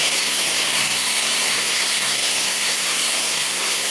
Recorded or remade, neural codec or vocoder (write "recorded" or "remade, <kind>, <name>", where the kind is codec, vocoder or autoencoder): remade, codec, SNAC